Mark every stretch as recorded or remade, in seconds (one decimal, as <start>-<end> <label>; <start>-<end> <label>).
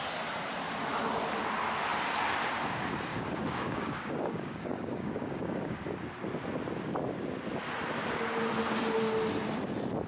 0.0-3.1 recorded; 3.1-5.9 remade; 5.9-10.1 recorded